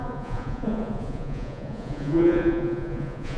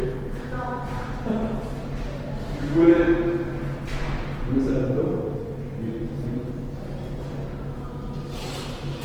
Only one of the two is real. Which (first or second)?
second